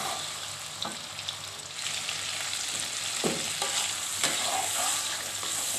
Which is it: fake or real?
real